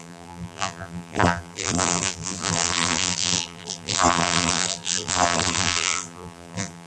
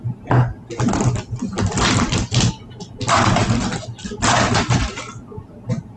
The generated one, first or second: first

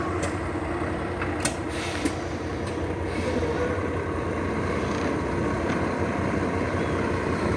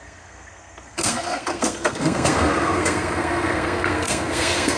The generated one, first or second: second